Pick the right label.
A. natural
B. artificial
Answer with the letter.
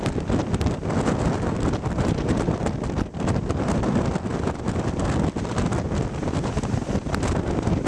A